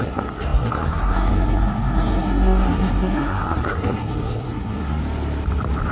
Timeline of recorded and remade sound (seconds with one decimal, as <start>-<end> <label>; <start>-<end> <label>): 0.0-5.0 remade; 5.0-5.9 recorded

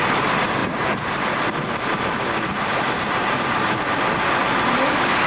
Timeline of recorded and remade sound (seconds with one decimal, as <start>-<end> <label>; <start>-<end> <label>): 0.0-0.6 recorded; 0.6-3.8 remade; 3.8-5.3 recorded

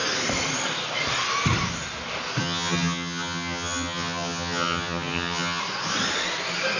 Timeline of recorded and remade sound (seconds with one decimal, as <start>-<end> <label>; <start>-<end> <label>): 0.0-2.4 recorded; 2.4-5.6 remade; 5.6-6.8 recorded

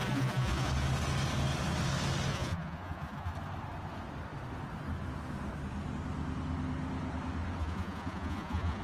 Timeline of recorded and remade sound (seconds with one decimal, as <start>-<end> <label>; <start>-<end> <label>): 0.0-0.7 remade; 0.7-2.3 recorded; 2.3-3.3 remade; 3.3-7.6 recorded; 7.6-8.8 remade